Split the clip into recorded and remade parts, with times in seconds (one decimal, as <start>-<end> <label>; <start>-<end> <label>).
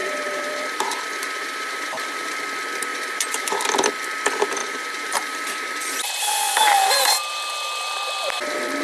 0.0-2.4 remade; 2.4-2.9 recorded; 2.9-3.6 remade; 3.6-4.6 recorded; 4.6-5.9 remade; 5.9-8.8 recorded